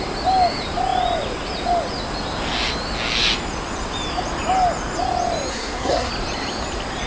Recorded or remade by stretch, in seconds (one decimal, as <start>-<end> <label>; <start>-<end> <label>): 0.0-5.5 recorded; 5.5-6.1 remade; 6.1-7.1 recorded